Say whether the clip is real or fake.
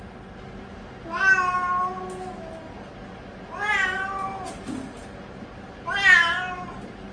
real